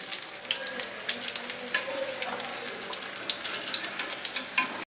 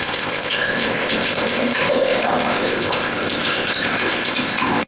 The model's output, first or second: second